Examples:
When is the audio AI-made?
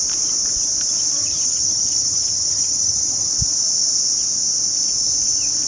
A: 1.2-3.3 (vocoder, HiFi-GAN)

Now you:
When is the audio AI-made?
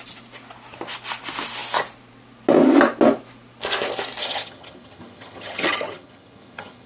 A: 4.2-6.9 (vocoder, HiFi-GAN)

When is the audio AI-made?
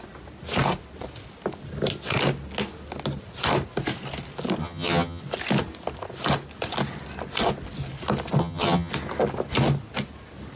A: 4.6-5.2 (vocoder, HiFi-GAN); 8.4-8.9